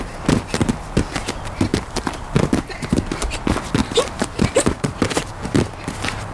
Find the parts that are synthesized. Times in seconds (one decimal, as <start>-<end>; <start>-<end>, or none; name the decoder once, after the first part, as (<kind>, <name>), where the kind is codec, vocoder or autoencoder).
1.7-3.4 (vocoder, BigVGAN v2); 3.8-5.4